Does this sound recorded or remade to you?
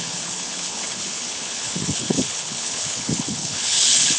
remade